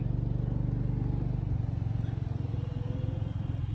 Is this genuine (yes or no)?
yes